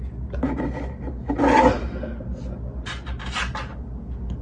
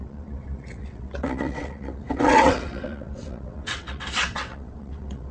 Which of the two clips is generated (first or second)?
second